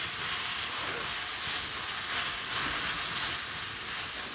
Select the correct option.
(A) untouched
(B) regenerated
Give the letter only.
A